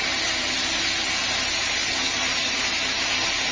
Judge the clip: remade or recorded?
recorded